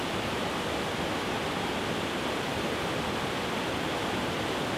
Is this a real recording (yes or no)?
yes